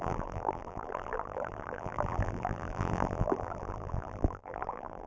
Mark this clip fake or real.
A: fake